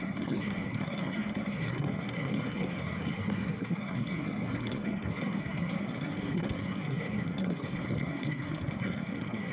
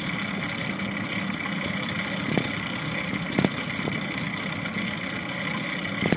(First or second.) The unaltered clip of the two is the second